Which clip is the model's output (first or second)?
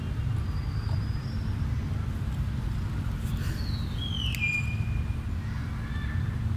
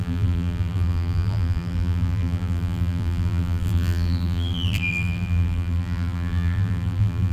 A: second